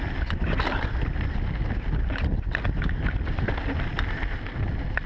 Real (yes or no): yes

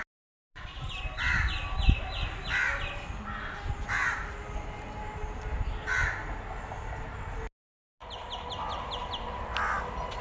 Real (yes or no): yes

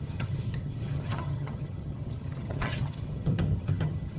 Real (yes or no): no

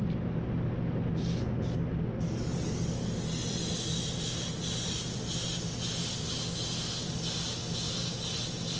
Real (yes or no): yes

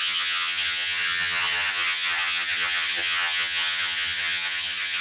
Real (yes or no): no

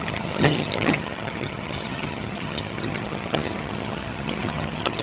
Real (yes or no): no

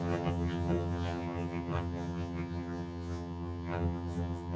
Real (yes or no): no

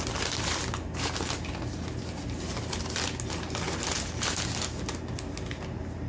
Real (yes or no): yes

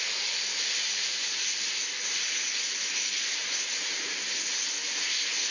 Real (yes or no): yes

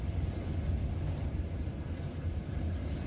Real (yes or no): yes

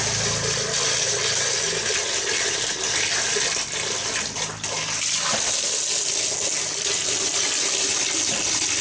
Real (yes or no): yes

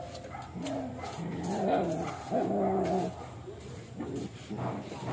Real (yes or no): yes